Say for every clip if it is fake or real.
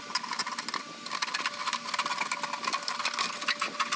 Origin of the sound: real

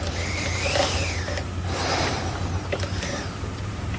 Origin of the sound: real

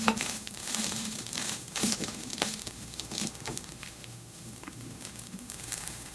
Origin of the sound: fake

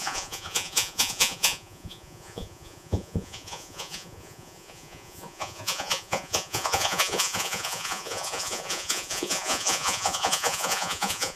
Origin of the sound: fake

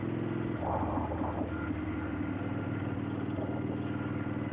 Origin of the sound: real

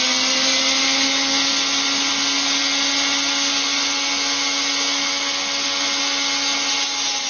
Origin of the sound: real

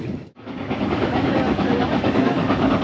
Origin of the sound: fake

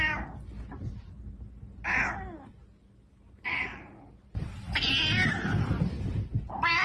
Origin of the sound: real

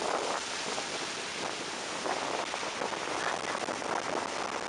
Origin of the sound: real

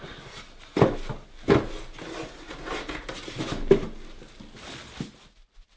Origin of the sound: real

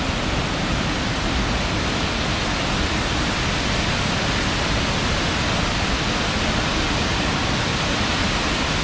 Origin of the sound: real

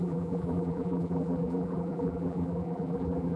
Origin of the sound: fake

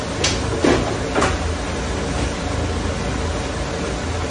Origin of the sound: real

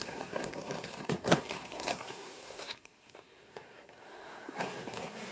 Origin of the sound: fake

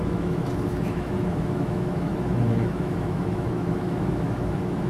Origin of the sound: fake